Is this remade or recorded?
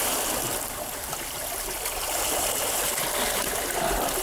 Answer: recorded